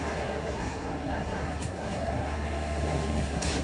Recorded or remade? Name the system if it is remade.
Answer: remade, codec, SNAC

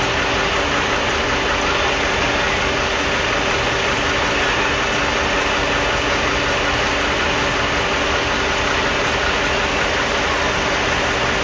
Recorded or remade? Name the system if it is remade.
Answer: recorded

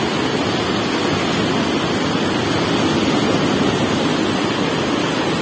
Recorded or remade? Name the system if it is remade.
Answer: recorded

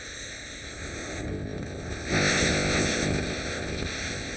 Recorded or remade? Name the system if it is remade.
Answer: remade, codec, ZipCodec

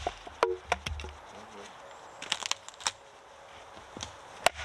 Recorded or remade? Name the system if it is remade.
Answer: recorded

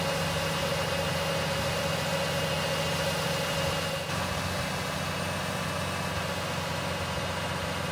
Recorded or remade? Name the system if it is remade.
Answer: recorded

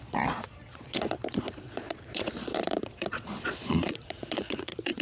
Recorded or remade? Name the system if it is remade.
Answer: remade, vocoder, Vocos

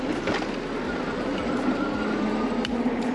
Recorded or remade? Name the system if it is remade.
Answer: recorded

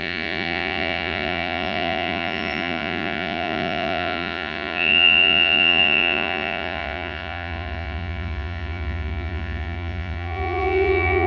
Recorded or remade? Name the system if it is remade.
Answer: remade, vocoder, Vocos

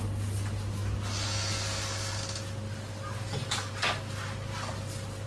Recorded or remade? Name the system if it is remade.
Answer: recorded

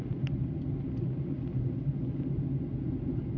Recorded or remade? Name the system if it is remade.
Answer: recorded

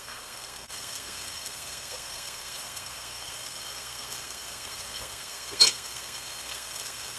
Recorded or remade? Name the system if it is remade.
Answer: remade, codec, SNAC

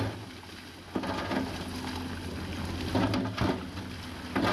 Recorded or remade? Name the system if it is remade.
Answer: recorded